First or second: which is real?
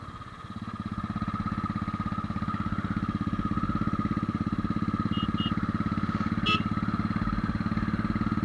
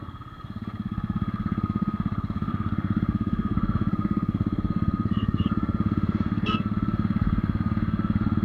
first